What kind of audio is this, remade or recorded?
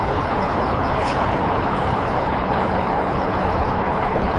remade